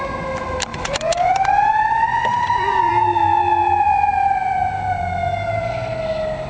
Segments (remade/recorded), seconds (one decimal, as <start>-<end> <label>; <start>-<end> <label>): 0.0-0.7 recorded; 0.7-2.9 remade; 2.9-6.5 recorded